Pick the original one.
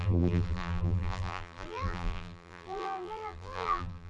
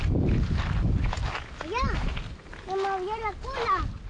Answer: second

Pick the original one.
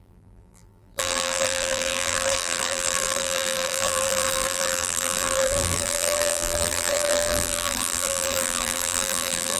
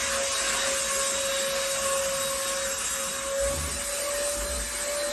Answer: second